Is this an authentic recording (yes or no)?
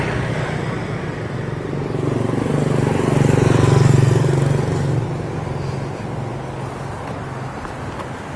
yes